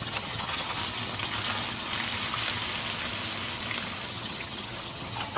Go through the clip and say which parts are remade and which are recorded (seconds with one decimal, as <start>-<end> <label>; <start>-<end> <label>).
0.0-0.8 remade; 0.8-4.0 recorded; 4.0-5.4 remade